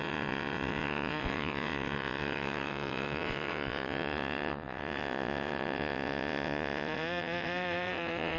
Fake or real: fake